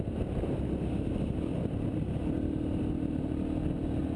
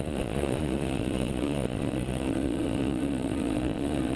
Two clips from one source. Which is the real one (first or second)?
first